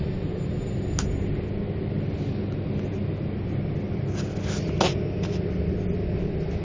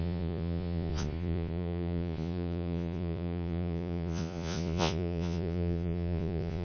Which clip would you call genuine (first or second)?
first